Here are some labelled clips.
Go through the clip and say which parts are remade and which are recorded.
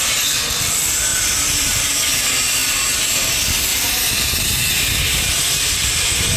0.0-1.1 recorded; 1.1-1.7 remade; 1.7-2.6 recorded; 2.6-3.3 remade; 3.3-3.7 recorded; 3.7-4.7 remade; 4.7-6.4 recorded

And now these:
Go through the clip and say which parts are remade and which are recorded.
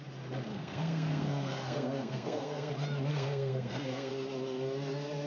0.0-0.5 recorded; 0.5-2.7 remade; 2.7-3.1 recorded; 3.1-4.1 remade; 4.1-5.3 recorded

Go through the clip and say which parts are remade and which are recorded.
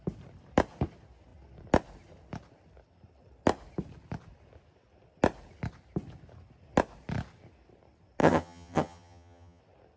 0.0-8.2 recorded; 8.2-9.6 remade; 9.6-10.0 recorded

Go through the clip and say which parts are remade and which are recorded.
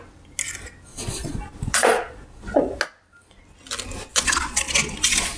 0.0-0.9 recorded; 0.9-2.8 remade; 2.8-4.1 recorded; 4.1-5.4 remade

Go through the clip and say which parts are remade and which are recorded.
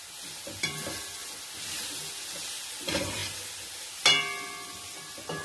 0.0-5.4 recorded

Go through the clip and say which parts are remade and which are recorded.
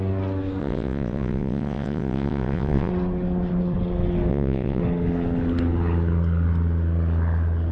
0.0-0.6 recorded; 0.6-2.9 remade; 2.9-4.3 recorded; 4.3-4.8 remade; 4.8-7.7 recorded